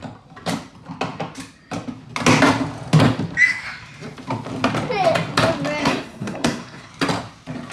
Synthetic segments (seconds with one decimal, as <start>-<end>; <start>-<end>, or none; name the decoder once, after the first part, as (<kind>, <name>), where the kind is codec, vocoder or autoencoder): 5.8-6.9 (codec, SNAC)